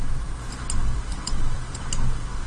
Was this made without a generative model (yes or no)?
yes